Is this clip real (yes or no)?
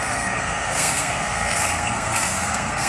no